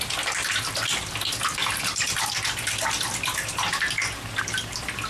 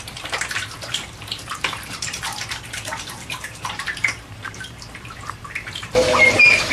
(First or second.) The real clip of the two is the first